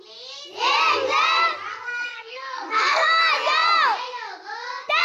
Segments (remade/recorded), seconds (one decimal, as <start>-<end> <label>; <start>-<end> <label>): 0.0-1.7 recorded; 1.7-3.2 remade; 3.2-5.0 recorded

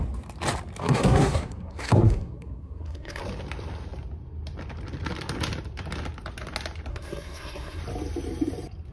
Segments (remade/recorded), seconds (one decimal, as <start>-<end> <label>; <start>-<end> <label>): 0.0-0.8 recorded; 0.8-3.2 remade; 3.2-6.9 recorded; 6.9-7.8 remade; 7.8-8.9 recorded

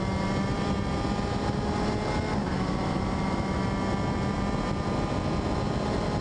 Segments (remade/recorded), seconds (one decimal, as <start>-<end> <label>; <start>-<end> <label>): 0.0-2.4 recorded; 2.4-3.6 remade; 3.6-6.2 recorded

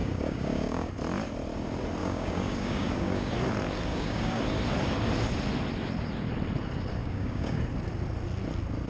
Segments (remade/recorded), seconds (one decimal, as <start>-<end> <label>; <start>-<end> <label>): 0.0-0.9 remade; 0.9-2.0 recorded; 2.0-3.3 remade; 3.3-3.9 recorded; 3.9-4.4 remade; 4.4-7.0 recorded; 7.0-7.6 remade; 7.6-8.9 recorded

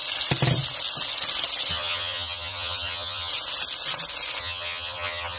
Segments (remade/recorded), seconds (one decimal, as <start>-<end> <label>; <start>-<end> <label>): 0.0-1.7 recorded; 1.7-3.3 remade; 3.3-4.4 recorded; 4.4-5.4 remade

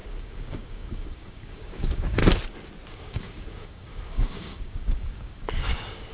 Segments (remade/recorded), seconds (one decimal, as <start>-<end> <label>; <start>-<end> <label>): 0.0-2.2 remade; 2.2-2.9 recorded; 2.9-6.1 remade

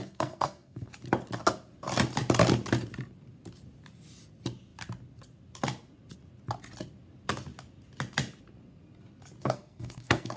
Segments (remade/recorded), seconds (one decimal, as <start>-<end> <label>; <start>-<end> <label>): 0.0-0.9 remade; 0.9-9.4 recorded; 9.4-10.4 remade

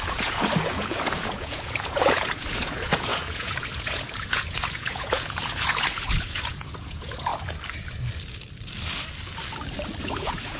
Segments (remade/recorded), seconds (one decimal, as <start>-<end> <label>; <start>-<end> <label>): 0.0-7.3 remade; 7.3-10.0 recorded; 10.0-10.6 remade